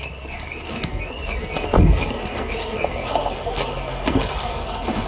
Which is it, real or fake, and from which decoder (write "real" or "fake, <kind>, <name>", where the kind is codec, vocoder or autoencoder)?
fake, codec, SNAC